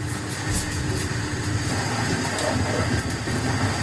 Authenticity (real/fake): real